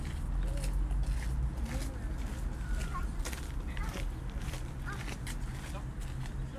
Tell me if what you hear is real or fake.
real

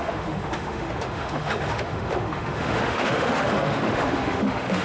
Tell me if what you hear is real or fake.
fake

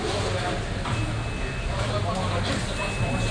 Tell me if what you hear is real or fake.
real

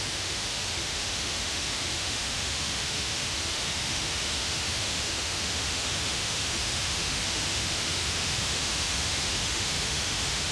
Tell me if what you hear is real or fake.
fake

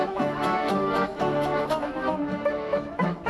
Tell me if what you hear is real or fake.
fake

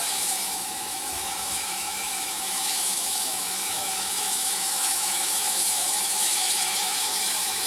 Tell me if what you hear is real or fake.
fake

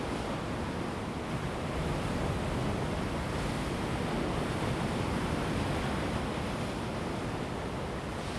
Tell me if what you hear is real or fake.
real